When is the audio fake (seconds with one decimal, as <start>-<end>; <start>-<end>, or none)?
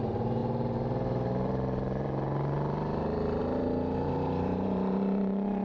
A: 0.0-5.6